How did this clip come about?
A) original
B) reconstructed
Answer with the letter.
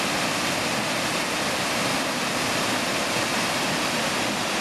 A